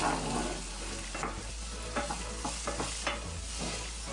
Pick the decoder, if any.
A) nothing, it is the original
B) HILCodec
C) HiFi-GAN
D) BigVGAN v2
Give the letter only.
A